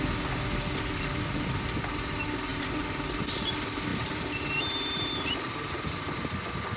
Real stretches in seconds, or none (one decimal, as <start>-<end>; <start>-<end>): 0.0-2.5; 3.2-3.9; 6.0-6.8